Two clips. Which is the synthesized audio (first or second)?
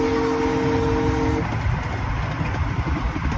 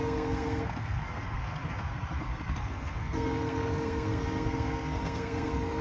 second